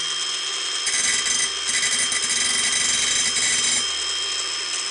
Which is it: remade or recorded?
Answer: recorded